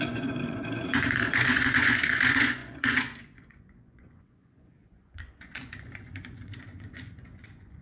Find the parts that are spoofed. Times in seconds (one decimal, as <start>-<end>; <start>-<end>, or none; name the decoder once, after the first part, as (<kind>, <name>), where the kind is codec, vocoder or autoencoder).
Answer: 0.0-7.8 (vocoder, Vocos)